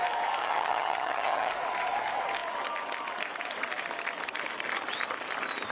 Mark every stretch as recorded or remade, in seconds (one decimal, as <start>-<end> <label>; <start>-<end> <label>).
0.0-0.4 recorded; 0.4-1.5 remade; 1.5-5.7 recorded